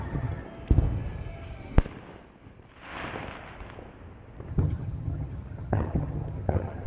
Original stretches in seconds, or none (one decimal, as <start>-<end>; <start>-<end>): 0.4-4.5